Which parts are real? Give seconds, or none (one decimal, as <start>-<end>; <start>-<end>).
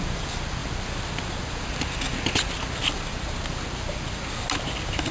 0.0-5.1